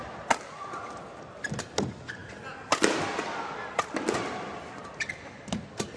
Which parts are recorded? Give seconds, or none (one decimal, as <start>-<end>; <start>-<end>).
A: 0.0-6.0